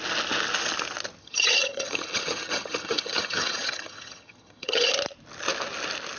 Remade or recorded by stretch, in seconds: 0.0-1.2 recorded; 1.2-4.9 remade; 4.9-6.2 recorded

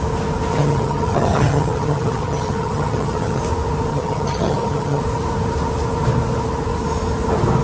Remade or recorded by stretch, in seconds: 0.0-0.5 recorded; 0.5-3.4 remade; 3.4-3.9 recorded; 3.9-5.0 remade; 5.0-7.6 recorded

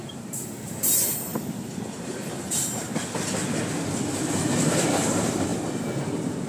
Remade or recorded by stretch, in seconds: 0.0-1.3 remade; 1.3-2.0 recorded; 2.0-2.9 remade; 2.9-4.7 recorded; 4.7-5.5 remade; 5.5-6.5 recorded

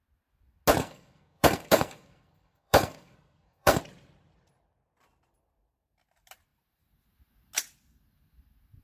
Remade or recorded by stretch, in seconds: 0.0-0.8 recorded; 0.8-3.8 remade; 3.8-8.8 recorded

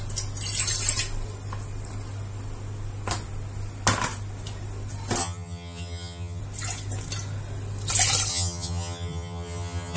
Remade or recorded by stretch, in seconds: 0.0-5.2 recorded; 5.2-6.4 remade; 6.4-8.3 recorded; 8.3-10.0 remade